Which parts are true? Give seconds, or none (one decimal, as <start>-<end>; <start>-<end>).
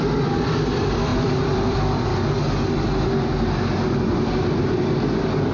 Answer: 2.1-5.5